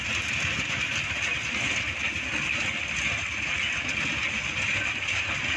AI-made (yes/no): no